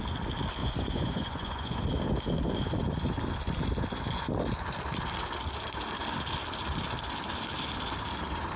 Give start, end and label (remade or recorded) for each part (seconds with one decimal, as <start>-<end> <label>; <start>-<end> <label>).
0.0-0.6 recorded; 0.6-1.8 remade; 1.8-8.6 recorded